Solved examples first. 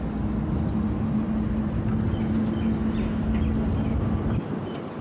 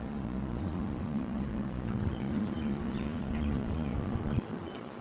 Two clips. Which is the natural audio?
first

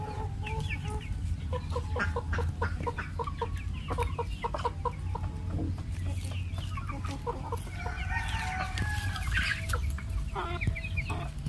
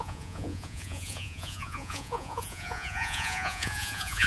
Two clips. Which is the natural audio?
first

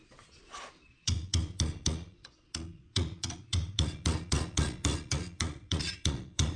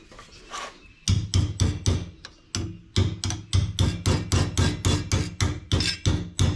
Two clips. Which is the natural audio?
second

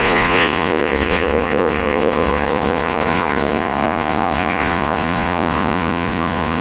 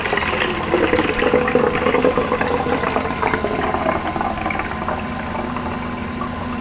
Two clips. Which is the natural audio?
second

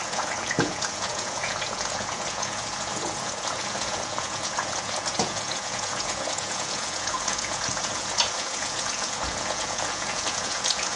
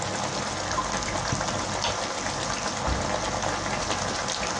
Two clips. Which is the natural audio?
second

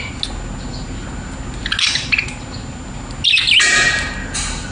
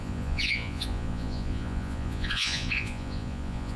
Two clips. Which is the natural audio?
first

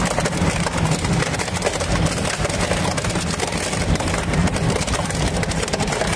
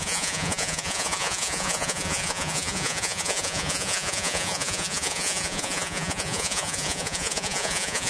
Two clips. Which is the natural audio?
first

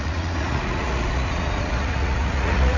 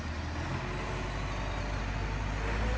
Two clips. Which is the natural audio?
second